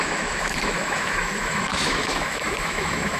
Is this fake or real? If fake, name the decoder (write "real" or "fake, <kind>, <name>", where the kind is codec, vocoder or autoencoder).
fake, autoencoder, DAC-VAE